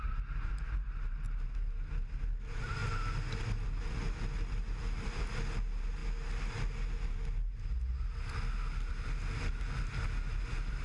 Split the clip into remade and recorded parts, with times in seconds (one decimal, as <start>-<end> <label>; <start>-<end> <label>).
0.0-10.8 recorded